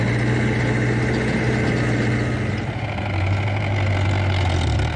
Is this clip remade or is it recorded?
recorded